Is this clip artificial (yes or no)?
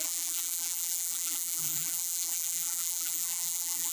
yes